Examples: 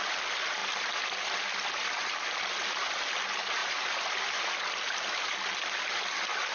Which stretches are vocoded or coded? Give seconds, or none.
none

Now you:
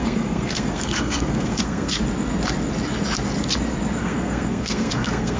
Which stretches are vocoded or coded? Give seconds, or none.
0.0-2.0 (codec, SNAC); 4.0-5.4

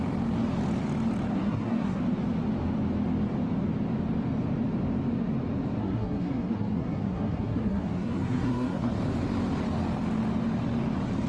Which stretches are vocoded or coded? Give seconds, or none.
1.3-2.0 (codec, SNAC); 5.8-8.9

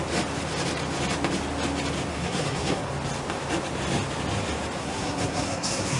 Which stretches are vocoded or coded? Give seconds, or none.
2.1-2.9 (codec, SNAC); 4.8-6.0